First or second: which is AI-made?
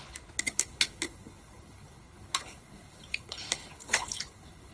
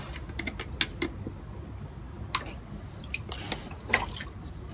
first